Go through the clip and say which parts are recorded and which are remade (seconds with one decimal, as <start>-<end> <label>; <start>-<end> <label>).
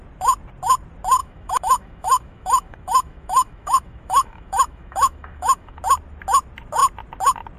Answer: 0.0-1.2 recorded; 1.2-5.8 remade; 5.8-7.6 recorded